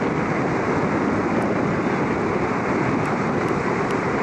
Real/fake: real